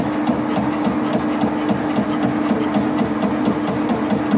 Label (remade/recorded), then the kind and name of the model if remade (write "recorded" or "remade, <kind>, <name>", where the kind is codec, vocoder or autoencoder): recorded